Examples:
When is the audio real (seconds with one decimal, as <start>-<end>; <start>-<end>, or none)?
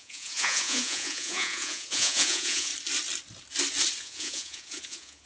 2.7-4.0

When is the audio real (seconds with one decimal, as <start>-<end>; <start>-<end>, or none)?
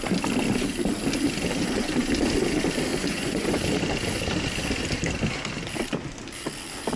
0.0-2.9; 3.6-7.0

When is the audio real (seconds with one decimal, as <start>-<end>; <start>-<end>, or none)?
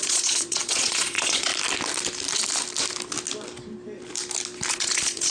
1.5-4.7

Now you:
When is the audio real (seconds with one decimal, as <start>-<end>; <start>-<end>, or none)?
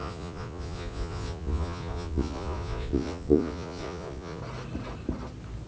4.4-5.7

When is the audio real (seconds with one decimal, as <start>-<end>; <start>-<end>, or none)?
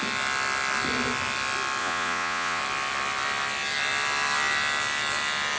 0.0-1.8; 2.6-5.6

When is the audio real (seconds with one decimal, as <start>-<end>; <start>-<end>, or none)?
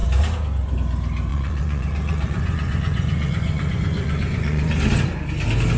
0.0-1.3; 4.8-5.8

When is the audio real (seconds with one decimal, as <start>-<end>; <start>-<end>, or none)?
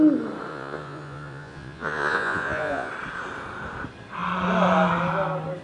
0.0-0.5; 2.9-5.6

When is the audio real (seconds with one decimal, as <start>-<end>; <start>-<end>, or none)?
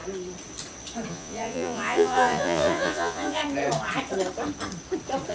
0.0-1.1; 3.4-5.3